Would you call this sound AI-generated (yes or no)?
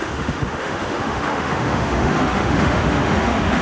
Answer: yes